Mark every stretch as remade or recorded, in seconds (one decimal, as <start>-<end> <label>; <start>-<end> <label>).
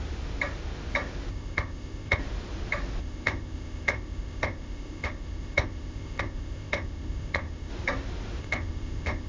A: 0.0-1.3 recorded; 1.3-2.2 remade; 2.2-3.0 recorded; 3.0-7.7 remade; 7.7-8.4 recorded; 8.4-9.3 remade